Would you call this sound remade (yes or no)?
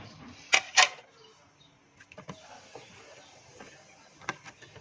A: no